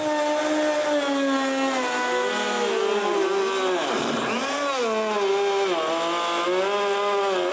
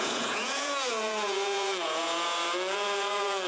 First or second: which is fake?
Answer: second